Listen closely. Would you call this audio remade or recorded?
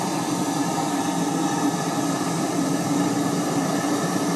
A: remade